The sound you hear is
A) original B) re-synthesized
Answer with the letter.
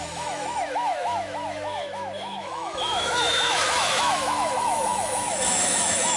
B